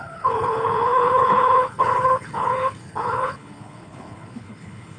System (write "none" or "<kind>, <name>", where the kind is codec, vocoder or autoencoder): codec, HILCodec